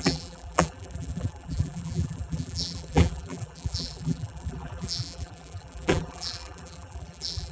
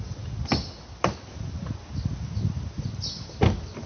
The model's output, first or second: first